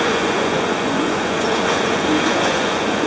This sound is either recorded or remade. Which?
remade